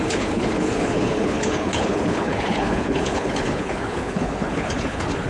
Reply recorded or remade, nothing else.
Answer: remade